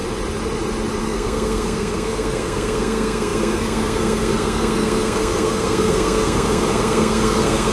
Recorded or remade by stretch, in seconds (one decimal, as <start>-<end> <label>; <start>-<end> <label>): 0.0-1.0 recorded; 1.0-7.7 remade